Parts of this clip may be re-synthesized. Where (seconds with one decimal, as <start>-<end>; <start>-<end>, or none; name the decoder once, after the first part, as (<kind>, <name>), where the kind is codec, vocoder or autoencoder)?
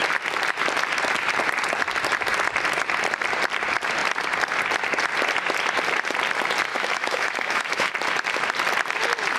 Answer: 6.7-7.9 (autoencoder, DAC-VAE)